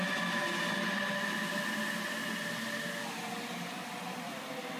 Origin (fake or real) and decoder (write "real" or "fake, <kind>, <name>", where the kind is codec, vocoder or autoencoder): real